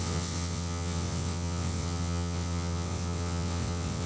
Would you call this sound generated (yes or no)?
yes